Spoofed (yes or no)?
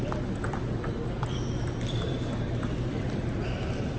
yes